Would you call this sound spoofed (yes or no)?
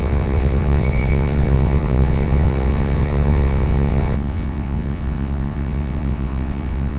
yes